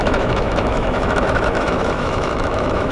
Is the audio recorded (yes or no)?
no